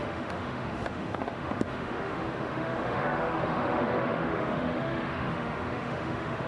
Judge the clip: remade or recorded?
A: remade